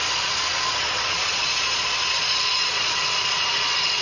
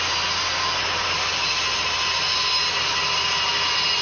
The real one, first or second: second